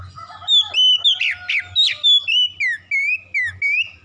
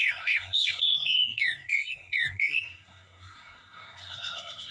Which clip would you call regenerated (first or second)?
second